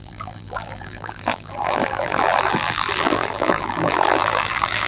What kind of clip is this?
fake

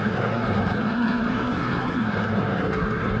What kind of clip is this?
fake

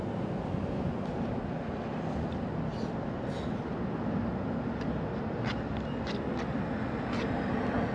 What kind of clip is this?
real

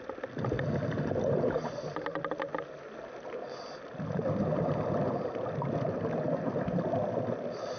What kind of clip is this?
real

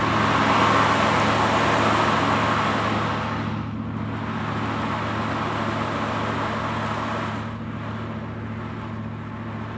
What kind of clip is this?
real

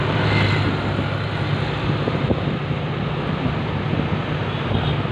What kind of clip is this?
real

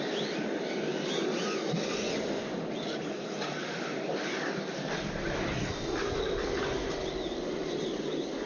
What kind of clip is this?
real